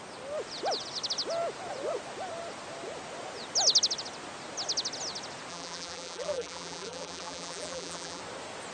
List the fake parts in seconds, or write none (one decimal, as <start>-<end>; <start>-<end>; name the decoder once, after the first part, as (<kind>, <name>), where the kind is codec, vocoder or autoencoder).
5.5-8.2 (vocoder, BigVGAN v2)